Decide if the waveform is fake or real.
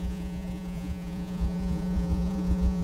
fake